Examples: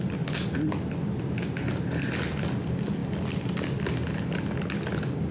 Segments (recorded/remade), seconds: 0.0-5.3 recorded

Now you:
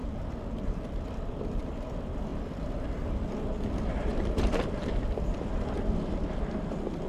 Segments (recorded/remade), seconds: 0.0-2.3 recorded; 2.3-2.9 remade; 2.9-4.1 recorded; 4.1-5.0 remade; 5.0-7.1 recorded

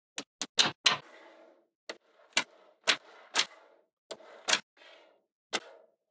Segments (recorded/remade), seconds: 0.0-6.1 recorded

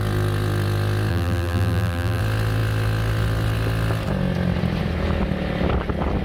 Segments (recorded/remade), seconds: 0.0-1.1 recorded; 1.1-2.2 remade; 2.2-6.2 recorded

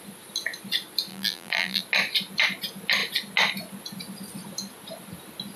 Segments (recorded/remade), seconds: 0.0-1.1 recorded; 1.1-1.8 remade; 1.8-5.6 recorded

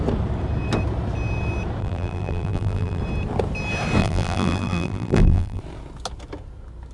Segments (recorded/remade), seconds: 0.0-1.8 recorded; 1.8-3.0 remade; 3.0-4.0 recorded; 4.0-5.6 remade; 5.6-6.9 recorded